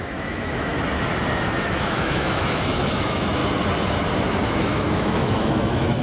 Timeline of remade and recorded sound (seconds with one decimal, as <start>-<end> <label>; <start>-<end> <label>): 0.0-0.7 remade; 0.7-1.7 recorded; 1.7-3.4 remade; 3.4-4.4 recorded; 4.4-6.0 remade